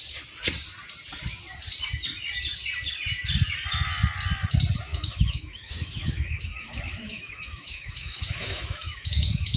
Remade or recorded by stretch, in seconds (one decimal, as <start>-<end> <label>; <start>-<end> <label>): 0.0-4.9 recorded; 4.9-9.6 remade